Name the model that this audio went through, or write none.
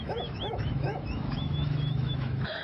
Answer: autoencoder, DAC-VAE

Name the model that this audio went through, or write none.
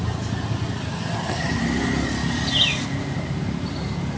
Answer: none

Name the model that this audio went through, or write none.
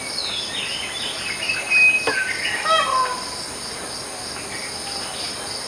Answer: none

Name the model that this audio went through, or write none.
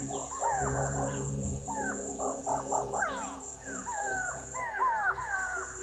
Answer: vocoder, Vocos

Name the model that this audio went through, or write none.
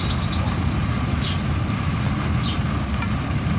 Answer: none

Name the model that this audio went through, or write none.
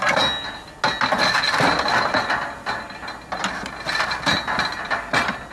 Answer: none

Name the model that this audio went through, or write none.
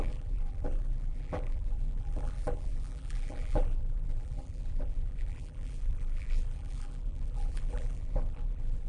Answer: vocoder, BigVGAN v2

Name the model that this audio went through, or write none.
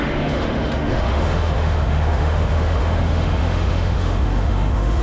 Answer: autoencoder, DAC-VAE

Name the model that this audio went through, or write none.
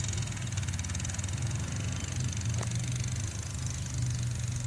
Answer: none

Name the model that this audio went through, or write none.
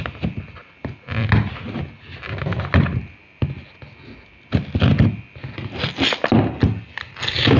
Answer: none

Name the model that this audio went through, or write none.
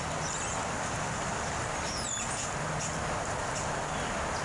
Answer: none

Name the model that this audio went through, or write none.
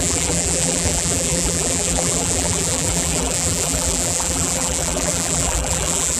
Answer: vocoder, BigVGAN v2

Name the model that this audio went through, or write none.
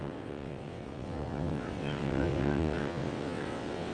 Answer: vocoder, WaveNeXt